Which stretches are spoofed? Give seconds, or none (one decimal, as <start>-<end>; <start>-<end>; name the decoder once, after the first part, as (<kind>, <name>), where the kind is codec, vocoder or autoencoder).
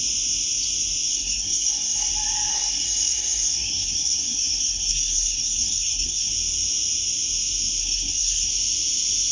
1.1-2.1 (codec, SNAC); 2.5-6.3; 7.8-8.5